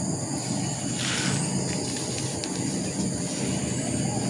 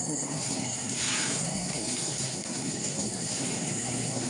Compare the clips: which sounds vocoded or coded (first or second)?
second